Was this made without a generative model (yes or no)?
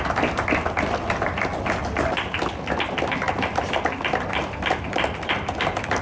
yes